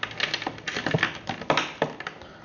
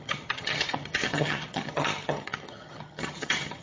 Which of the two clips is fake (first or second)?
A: second